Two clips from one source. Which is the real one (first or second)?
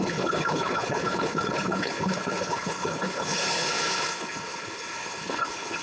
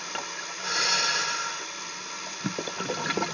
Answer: second